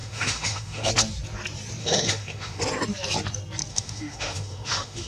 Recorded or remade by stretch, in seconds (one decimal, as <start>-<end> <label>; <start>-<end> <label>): 0.0-0.9 remade; 0.9-1.8 recorded; 1.8-2.6 remade; 2.6-3.7 recorded; 3.7-5.1 remade